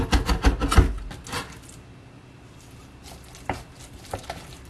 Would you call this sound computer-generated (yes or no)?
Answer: no